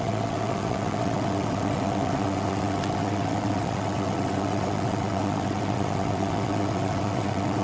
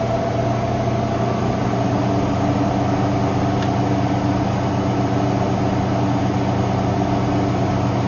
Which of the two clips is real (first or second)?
second